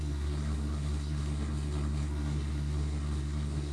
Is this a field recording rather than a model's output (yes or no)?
no